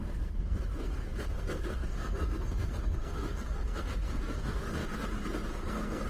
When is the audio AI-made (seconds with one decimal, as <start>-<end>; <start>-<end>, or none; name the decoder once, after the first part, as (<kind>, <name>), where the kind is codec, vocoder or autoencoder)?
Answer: 0.0-4.8 (codec, SNAC); 5.5-6.1